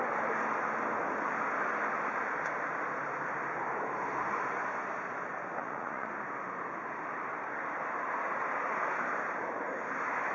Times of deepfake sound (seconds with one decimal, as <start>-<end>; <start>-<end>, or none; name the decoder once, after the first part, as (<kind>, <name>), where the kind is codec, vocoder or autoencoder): 5.6-6.1 (vocoder, Vocos)